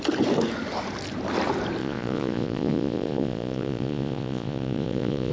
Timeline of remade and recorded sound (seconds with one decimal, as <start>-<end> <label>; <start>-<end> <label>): 0.0-1.8 recorded; 1.8-5.3 remade